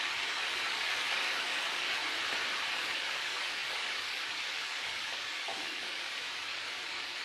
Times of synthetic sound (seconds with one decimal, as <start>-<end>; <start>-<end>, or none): 0.0-2.0; 2.8-7.2